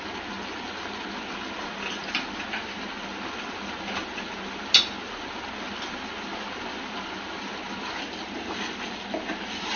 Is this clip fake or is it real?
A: real